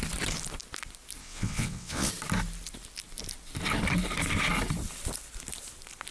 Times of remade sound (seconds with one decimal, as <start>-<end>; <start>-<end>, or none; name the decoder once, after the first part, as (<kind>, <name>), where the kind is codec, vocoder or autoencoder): 1.2-2.1 (vocoder, WaveNeXt)